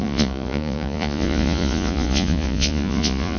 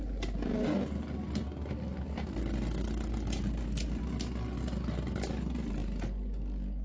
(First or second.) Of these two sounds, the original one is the second